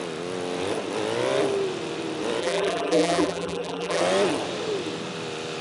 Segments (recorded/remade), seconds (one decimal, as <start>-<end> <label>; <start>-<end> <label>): 0.0-2.4 recorded; 2.4-4.0 remade; 4.0-5.6 recorded